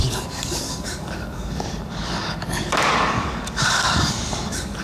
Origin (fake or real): fake